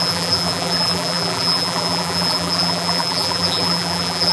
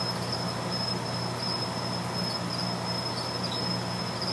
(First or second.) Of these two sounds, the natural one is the second